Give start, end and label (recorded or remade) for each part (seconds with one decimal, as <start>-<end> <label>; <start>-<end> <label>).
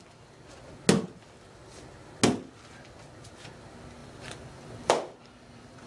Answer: 0.0-4.0 recorded; 4.0-5.9 remade